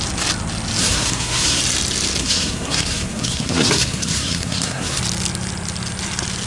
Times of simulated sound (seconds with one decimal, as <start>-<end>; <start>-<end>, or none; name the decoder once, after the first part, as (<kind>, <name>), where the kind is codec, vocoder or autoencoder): 0.8-1.6 (codec, SNAC); 2.2-5.0

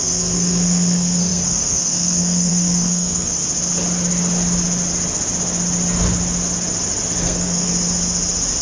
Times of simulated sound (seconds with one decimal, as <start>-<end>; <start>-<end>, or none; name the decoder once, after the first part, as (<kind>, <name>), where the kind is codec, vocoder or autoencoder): 0.0-3.4 (codec, SNAC); 7.2-7.7

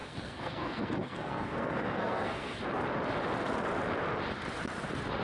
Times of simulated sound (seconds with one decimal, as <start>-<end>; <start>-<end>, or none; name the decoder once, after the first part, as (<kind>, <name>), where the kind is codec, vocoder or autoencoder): 0.0-2.6 (codec, SNAC)

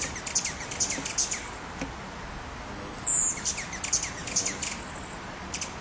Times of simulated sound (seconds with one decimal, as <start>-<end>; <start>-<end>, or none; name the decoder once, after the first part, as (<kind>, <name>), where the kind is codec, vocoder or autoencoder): none